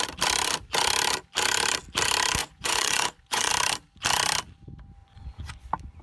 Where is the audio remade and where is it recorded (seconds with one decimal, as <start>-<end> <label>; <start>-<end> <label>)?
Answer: 0.0-2.4 recorded; 2.4-3.5 remade; 3.5-5.0 recorded; 5.0-5.6 remade; 5.6-6.0 recorded